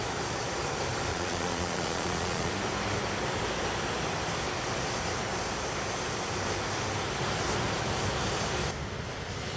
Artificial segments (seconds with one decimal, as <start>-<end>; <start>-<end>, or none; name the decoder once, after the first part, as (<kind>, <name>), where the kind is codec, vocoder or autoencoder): 1.1-2.5 (vocoder, Vocos)